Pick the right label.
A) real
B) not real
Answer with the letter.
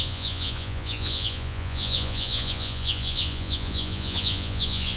B